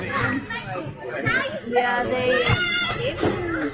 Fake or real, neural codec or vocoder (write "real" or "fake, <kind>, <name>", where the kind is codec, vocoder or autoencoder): real